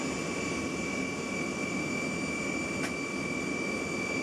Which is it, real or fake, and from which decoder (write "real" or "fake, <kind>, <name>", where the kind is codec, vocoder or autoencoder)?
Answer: real